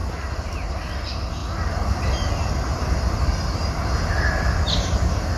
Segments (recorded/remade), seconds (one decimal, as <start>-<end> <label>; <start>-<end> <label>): 0.0-5.4 recorded